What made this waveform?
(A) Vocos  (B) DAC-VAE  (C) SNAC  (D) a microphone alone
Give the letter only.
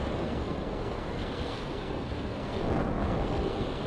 C